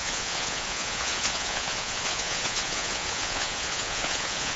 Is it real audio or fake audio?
fake